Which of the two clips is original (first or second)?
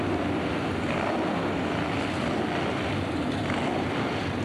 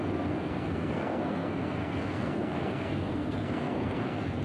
first